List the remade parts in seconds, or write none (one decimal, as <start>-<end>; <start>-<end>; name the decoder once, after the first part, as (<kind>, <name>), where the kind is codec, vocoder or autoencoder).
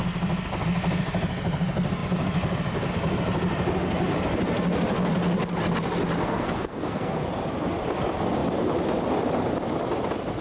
6.2-7.2 (codec, SNAC)